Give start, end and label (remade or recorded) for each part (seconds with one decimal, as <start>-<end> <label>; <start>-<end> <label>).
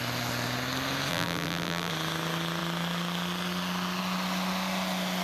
0.0-1.1 recorded; 1.1-1.9 remade; 1.9-5.2 recorded